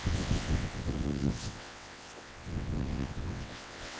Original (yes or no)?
no